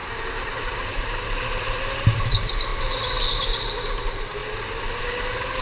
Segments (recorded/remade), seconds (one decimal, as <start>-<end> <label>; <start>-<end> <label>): 0.0-5.6 recorded